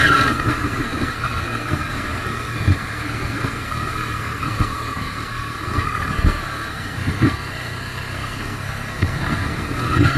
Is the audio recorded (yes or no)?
no